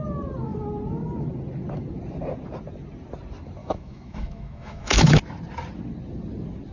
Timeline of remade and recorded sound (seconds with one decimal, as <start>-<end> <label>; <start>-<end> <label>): 0.0-3.6 recorded; 3.6-5.1 remade; 5.1-6.7 recorded